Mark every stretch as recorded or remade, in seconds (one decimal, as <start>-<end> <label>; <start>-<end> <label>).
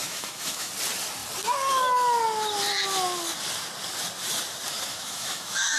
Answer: 0.0-0.7 remade; 0.7-4.9 recorded; 4.9-5.8 remade